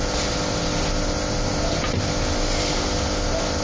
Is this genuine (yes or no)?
yes